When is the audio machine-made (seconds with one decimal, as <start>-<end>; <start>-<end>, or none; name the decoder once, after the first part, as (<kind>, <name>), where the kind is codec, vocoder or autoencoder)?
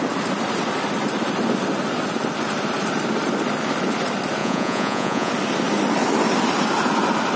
4.4-5.3 (vocoder, Vocos)